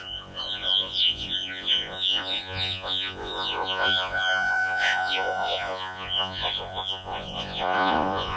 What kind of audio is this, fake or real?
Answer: fake